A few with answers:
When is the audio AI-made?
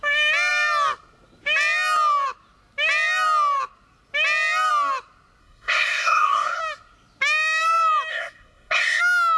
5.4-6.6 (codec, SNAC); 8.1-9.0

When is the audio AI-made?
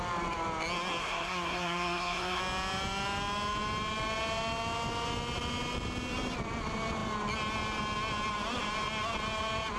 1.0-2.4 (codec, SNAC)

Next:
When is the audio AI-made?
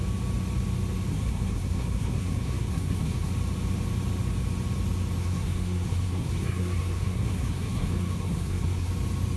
1.1-3.3 (codec, SNAC); 5.2-8.9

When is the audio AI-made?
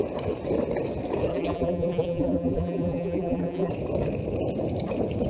1.3-3.7 (vocoder, BigVGAN v2)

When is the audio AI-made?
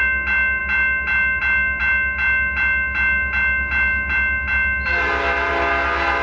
none